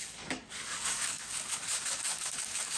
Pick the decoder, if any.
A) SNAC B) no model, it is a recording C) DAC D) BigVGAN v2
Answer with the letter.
C